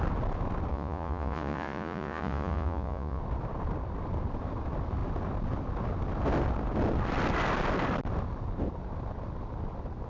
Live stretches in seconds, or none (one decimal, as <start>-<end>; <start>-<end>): 0.0-0.7; 3.2-10.1